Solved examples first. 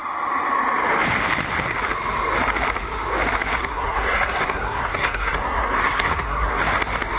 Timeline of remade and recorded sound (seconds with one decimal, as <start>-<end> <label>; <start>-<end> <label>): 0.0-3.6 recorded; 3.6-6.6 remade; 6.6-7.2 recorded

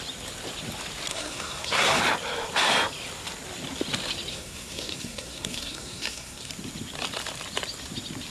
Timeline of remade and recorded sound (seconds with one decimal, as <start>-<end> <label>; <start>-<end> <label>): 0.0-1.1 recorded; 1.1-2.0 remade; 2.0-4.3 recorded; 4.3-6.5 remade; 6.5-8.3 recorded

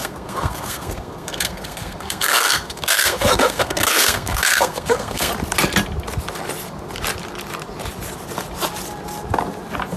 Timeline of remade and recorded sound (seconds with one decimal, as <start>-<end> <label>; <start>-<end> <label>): 0.0-5.3 remade; 5.3-10.0 recorded